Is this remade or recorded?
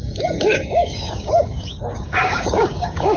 remade